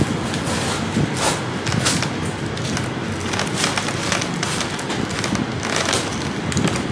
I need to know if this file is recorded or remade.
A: recorded